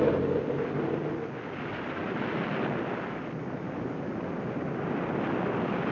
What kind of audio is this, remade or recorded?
recorded